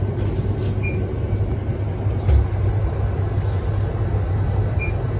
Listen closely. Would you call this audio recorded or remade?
recorded